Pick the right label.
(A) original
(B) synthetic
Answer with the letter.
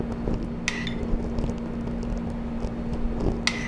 A